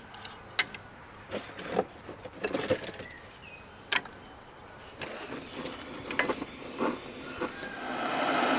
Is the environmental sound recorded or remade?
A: recorded